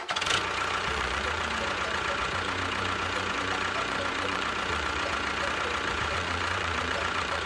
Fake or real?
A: fake